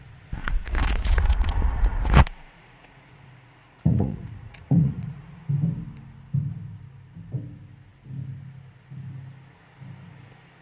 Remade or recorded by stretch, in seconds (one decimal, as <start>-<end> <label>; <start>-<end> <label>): 0.0-0.4 recorded; 0.4-5.4 remade; 5.4-10.6 recorded